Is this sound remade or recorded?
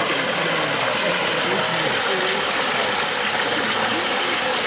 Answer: recorded